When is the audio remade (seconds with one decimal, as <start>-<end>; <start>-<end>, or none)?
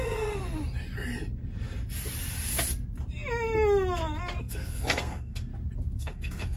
0.0-0.4; 4.4-5.5; 6.0-6.6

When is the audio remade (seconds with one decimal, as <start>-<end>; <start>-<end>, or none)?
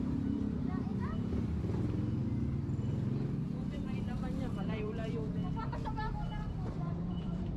0.0-0.9; 3.4-5.4; 6.1-7.6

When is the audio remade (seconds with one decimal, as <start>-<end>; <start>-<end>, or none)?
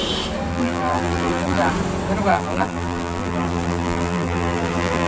0.5-1.7; 2.3-5.1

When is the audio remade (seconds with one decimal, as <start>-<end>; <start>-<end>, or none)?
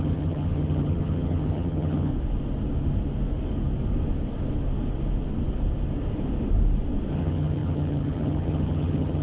0.0-2.1; 7.1-9.2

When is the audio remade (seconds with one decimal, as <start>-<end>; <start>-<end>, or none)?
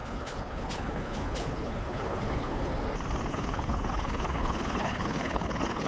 0.0-2.7; 3.3-5.9